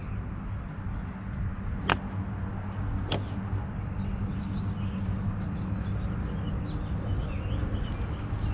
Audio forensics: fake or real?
real